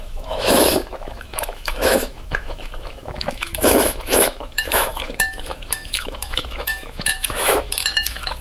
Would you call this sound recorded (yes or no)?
no